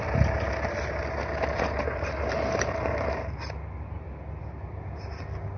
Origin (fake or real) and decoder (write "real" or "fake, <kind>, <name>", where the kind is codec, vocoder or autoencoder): real